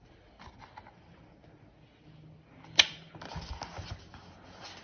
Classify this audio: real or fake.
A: real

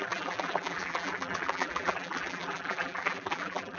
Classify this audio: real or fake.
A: fake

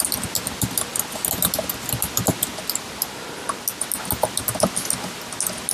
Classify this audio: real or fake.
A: real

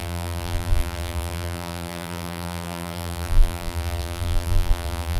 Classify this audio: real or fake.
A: fake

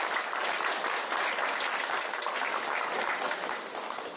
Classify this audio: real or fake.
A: real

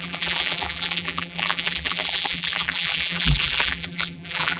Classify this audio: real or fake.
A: fake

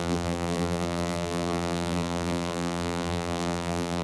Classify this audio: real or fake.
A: fake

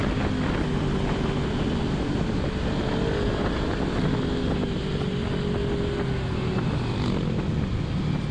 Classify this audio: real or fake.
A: real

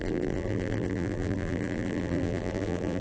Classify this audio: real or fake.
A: fake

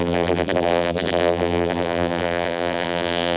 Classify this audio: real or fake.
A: fake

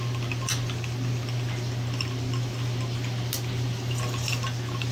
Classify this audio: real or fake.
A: real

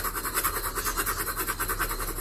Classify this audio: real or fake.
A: real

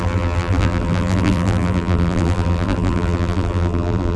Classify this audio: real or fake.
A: fake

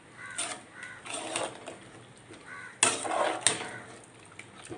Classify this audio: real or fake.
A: real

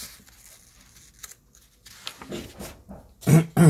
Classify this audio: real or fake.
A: real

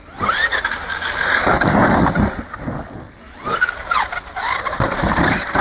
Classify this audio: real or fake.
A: real